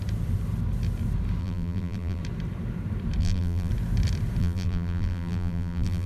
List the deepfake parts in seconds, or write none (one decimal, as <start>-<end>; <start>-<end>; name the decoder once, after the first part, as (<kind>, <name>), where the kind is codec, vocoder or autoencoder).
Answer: 1.4-2.2 (vocoder, BigVGAN v2); 3.2-3.7; 4.4-6.1